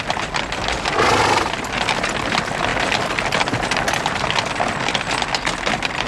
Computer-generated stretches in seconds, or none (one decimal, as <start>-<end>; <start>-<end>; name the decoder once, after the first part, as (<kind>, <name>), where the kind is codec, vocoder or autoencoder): none